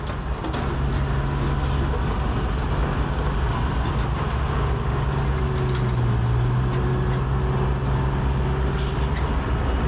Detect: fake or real real